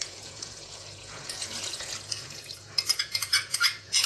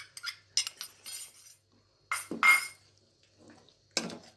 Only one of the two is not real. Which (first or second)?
first